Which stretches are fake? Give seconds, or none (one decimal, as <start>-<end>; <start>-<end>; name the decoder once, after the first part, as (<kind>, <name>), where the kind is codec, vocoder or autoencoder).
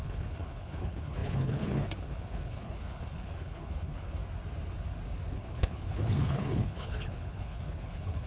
0.0-4.2 (codec, HILCodec); 5.3-8.3